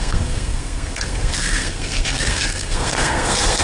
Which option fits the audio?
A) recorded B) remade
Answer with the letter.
B